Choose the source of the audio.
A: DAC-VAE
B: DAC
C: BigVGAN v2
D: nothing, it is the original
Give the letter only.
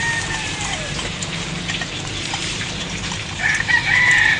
C